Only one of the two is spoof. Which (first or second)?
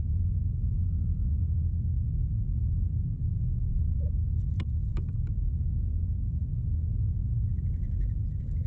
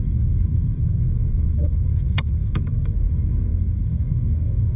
second